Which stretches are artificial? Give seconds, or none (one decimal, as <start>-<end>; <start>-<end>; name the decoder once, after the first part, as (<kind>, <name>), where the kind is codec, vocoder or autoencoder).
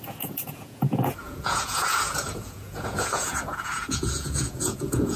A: 0.0-5.2 (vocoder, Vocos)